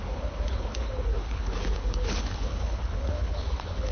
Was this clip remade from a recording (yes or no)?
yes